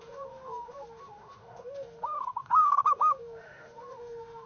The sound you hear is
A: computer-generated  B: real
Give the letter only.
A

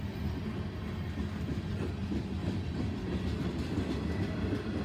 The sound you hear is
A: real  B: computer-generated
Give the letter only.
A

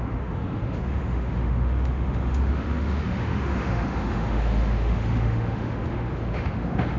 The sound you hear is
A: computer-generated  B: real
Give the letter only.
A